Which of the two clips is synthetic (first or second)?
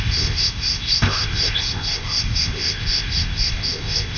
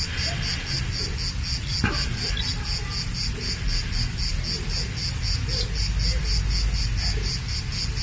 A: first